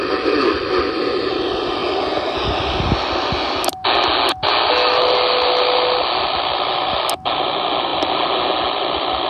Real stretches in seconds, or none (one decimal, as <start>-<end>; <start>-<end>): 0.0-7.9; 8.5-9.3

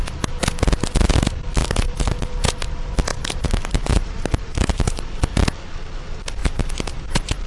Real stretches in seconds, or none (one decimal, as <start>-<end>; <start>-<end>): 0.0-1.6; 2.3-3.1; 5.0-6.4

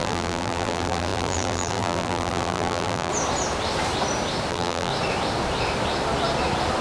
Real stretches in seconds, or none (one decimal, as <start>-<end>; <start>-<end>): 3.1-4.5; 4.9-6.8

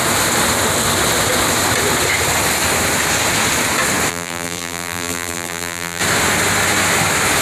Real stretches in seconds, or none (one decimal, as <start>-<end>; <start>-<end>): 0.0-4.1; 6.0-7.4

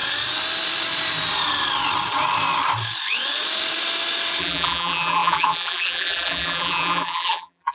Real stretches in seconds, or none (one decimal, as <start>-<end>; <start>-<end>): 0.0-4.4